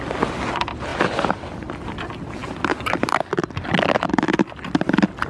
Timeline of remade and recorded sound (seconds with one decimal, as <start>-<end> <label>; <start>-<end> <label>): 0.0-5.3 recorded